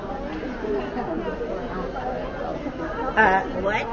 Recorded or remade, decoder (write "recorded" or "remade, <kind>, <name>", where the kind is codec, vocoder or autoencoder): recorded